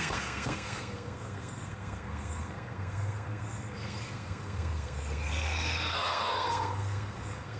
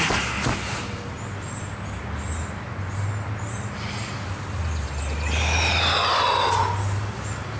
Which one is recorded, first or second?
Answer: second